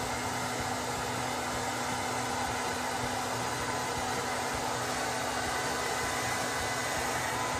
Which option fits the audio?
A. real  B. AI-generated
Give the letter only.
A